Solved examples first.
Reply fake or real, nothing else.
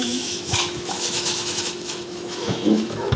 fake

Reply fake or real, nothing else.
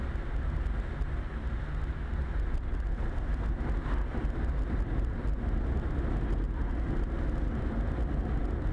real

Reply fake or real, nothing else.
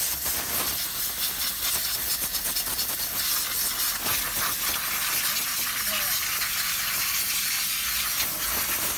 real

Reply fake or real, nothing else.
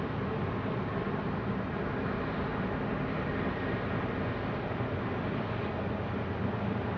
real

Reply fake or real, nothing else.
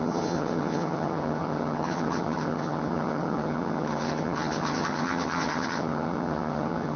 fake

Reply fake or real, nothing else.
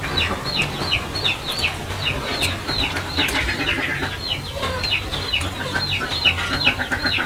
real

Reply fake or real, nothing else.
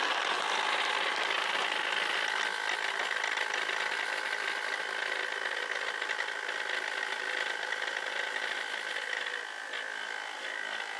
real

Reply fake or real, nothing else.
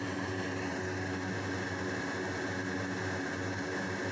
real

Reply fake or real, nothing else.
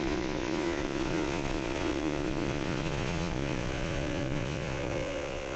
fake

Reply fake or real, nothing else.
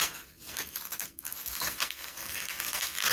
fake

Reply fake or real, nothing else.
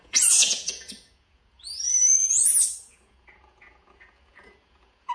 fake